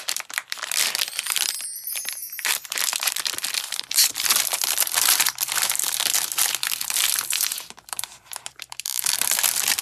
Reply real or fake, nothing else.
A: fake